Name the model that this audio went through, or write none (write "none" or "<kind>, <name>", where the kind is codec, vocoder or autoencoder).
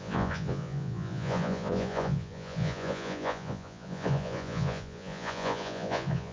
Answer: vocoder, Vocos